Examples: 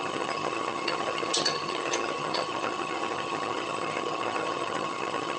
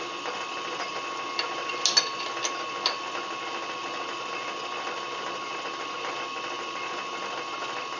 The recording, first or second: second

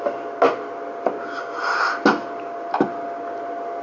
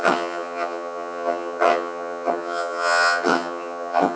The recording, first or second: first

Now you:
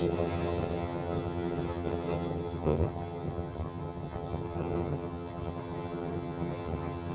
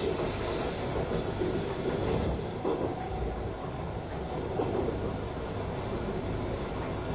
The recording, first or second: second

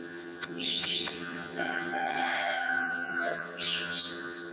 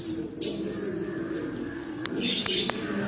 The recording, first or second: second